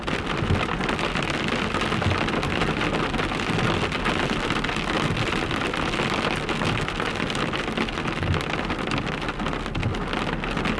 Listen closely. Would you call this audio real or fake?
real